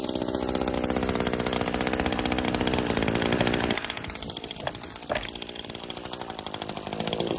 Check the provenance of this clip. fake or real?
real